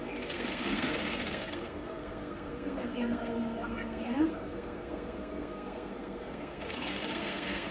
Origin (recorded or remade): remade